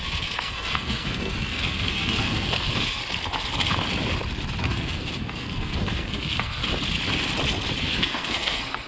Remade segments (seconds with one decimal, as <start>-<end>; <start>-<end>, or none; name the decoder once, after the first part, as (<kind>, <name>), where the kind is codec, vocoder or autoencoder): 0.0-3.0 (codec, SNAC); 4.6-6.6; 7.8-8.9